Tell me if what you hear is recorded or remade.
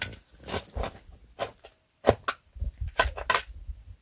recorded